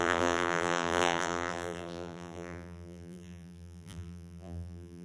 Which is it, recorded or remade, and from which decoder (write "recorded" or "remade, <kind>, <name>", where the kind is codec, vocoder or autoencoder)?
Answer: remade, vocoder, BigVGAN v2